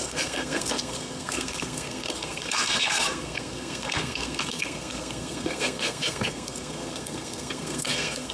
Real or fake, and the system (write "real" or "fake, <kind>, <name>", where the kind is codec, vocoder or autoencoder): fake, codec, SNAC